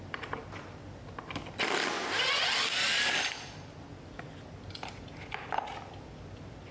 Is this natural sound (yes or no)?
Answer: yes